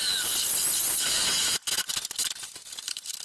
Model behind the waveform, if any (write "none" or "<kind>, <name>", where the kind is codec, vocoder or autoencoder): none